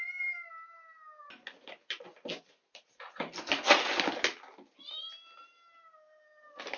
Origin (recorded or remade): recorded